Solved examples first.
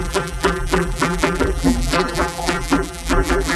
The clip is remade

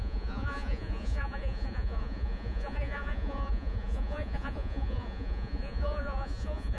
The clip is remade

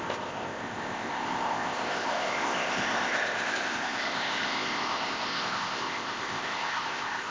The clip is remade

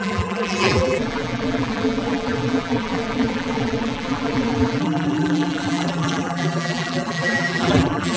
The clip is remade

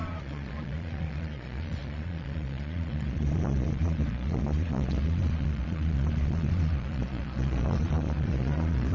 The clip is remade